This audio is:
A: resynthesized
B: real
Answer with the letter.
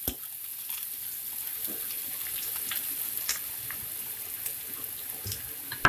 B